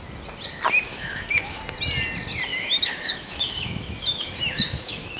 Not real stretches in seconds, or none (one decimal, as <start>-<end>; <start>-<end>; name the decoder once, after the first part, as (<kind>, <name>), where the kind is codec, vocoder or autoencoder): 0.9-1.6 (autoencoder, DAC-VAE); 2.5-5.2